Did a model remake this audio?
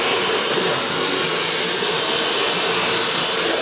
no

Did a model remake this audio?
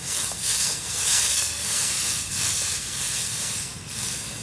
yes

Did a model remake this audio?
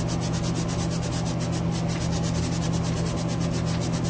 no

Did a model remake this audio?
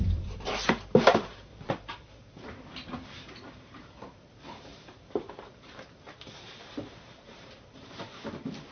yes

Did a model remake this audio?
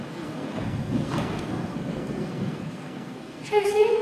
yes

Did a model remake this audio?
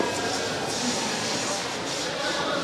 no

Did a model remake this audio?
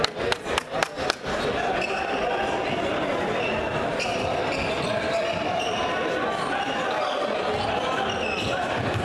no